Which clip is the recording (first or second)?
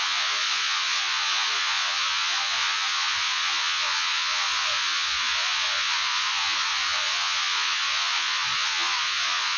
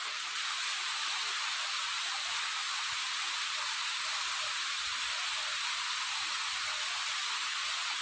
second